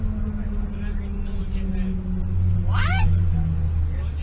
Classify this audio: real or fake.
real